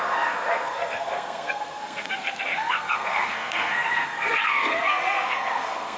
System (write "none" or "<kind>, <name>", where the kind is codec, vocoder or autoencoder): codec, SNAC